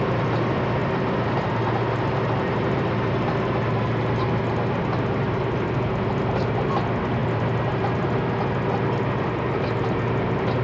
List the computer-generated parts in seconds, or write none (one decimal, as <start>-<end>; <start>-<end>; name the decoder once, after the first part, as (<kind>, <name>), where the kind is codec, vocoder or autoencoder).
none